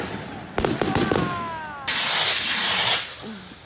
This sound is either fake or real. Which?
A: real